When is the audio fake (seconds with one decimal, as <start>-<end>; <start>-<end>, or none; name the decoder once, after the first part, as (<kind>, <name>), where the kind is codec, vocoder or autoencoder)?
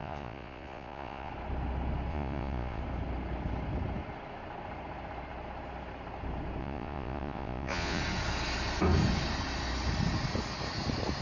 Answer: 0.0-1.3 (vocoder, Vocos); 2.1-2.8; 6.6-8.0